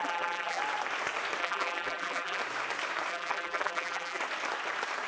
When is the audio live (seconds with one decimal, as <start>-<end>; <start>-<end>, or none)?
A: 0.6-1.4; 2.4-3.1; 4.2-5.1